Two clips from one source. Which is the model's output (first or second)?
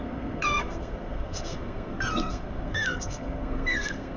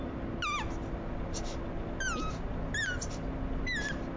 first